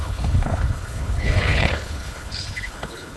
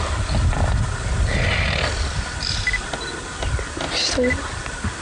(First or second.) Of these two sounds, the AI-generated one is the first